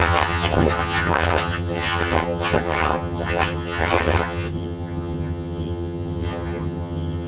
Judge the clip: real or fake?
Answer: fake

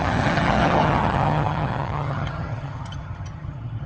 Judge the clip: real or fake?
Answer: fake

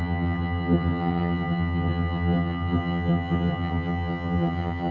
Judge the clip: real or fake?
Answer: fake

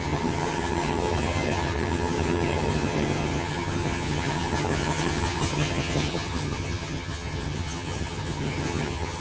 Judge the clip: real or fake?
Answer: fake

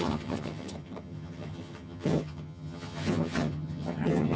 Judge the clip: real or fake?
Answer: fake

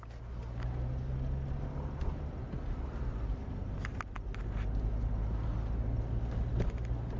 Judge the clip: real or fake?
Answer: real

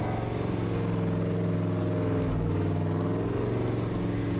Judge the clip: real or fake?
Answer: real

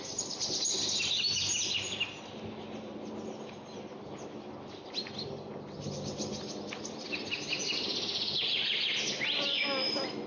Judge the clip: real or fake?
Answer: real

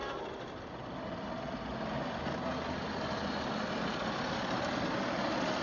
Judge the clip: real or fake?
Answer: real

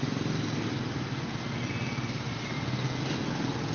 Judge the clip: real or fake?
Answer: real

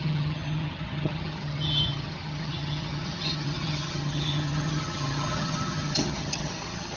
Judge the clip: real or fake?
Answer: fake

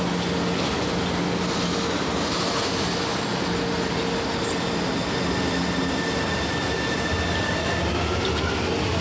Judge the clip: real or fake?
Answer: real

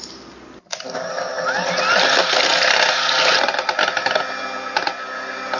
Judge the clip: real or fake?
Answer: real